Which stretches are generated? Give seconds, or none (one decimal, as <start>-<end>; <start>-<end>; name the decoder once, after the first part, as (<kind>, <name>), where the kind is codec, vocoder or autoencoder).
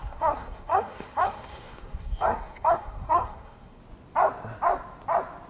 0.0-3.8 (codec, SNAC)